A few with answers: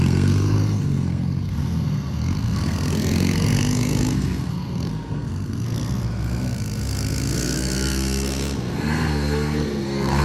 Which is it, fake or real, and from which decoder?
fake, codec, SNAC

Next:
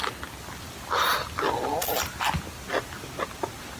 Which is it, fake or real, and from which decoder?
real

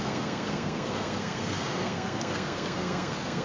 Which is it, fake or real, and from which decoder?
fake, codec, SNAC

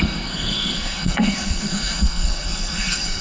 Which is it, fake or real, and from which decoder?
fake, codec, SNAC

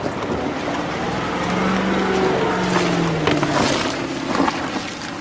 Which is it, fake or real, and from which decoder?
real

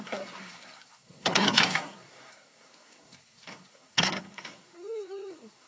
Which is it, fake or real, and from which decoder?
fake, codec, SNAC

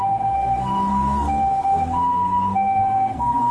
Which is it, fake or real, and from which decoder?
fake, codec, SNAC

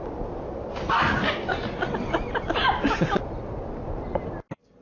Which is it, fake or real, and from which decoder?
real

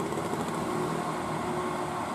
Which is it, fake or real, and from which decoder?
real